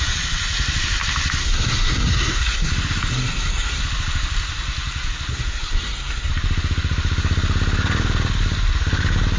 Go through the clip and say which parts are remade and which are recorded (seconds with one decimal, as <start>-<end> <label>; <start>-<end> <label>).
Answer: 0.0-1.4 recorded; 1.4-2.7 remade; 2.7-3.1 recorded; 3.1-3.8 remade; 3.8-5.3 recorded; 5.3-6.3 remade; 6.3-9.4 recorded